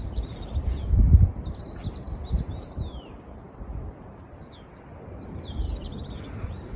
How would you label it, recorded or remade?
recorded